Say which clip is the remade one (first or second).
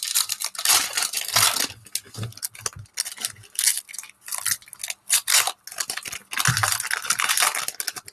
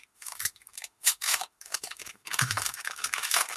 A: second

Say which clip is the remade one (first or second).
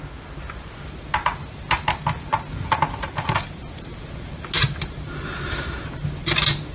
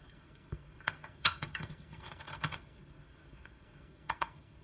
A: second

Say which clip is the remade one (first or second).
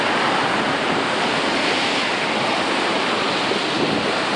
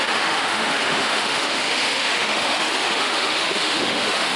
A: second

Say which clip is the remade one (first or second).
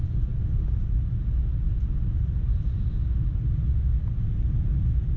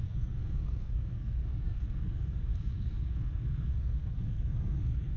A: second